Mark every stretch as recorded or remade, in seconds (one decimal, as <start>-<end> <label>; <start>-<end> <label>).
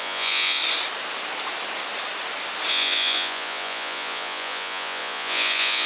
0.0-0.6 remade; 0.6-2.7 recorded; 2.7-5.9 remade